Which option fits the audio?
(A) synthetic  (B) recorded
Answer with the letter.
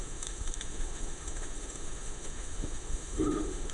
A